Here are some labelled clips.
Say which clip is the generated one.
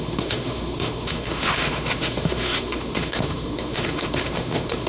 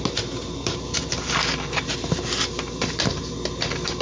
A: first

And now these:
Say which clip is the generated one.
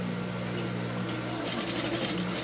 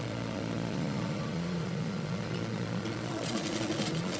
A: second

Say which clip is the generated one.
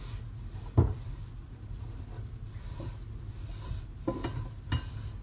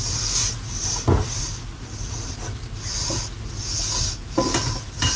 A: first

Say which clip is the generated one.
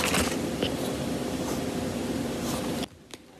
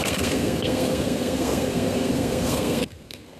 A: second